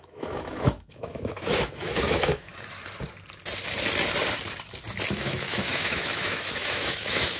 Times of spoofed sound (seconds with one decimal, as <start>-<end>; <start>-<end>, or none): 0.0-2.5; 5.1-7.4

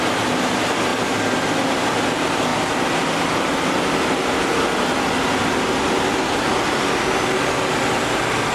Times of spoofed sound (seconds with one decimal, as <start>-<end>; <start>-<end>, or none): none

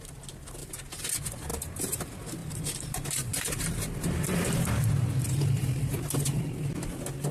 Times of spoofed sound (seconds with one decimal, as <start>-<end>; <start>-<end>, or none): 0.6-1.1; 1.5-2.0; 2.4-6.4

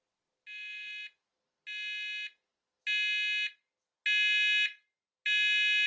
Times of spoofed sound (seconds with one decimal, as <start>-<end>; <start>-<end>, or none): none

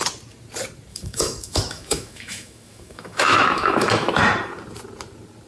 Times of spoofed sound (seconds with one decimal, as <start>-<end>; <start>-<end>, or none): 0.9-4.2

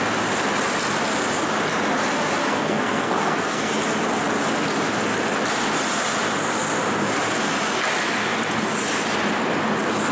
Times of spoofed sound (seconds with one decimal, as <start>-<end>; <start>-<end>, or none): 2.4-3.7

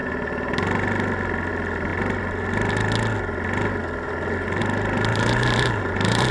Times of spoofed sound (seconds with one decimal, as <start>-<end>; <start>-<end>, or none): 5.1-6.3

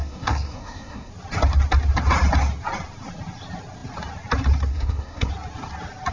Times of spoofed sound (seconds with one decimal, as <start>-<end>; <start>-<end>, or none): 0.0-1.1; 4.7-5.3